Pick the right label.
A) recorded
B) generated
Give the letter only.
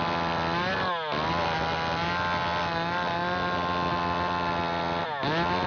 A